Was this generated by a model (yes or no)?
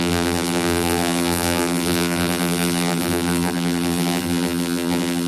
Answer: yes